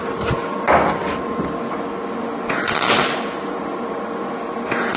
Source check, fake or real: real